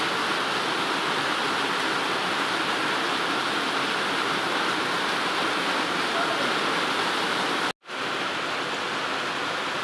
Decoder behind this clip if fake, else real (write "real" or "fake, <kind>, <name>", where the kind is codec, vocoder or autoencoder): real